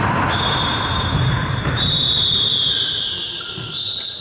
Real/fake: fake